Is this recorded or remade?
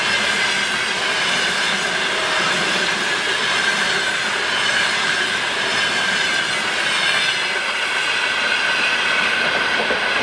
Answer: recorded